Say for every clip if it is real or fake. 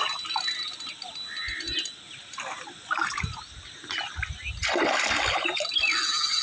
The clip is real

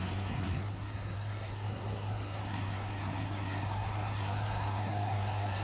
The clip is fake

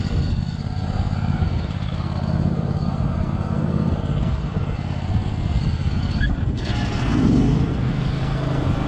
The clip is fake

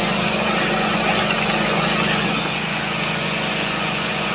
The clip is fake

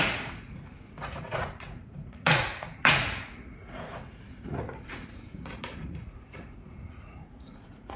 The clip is fake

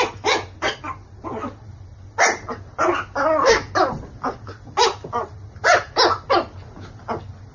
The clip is real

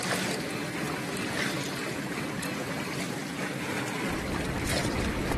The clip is real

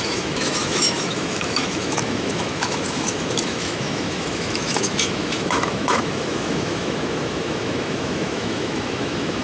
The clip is fake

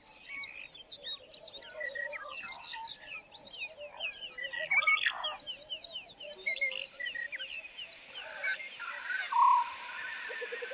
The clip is real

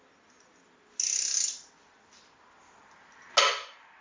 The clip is real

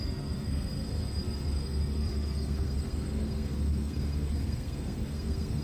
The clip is fake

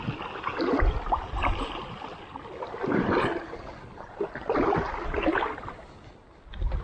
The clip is real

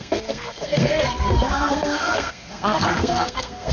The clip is fake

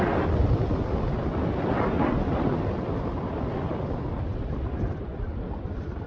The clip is real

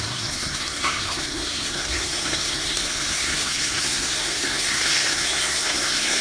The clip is fake